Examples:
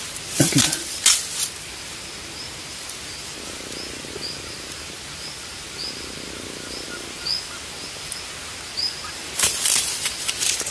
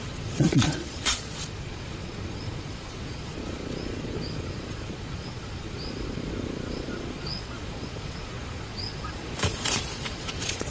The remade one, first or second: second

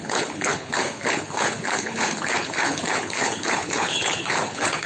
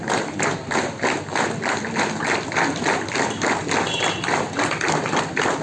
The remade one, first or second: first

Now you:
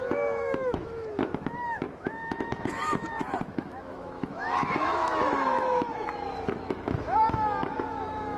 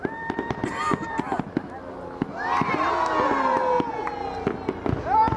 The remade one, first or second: first